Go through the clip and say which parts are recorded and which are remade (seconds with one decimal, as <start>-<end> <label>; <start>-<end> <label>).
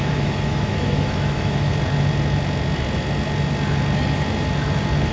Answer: 0.0-1.7 remade; 1.7-5.1 recorded